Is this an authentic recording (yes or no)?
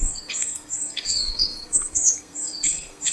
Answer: no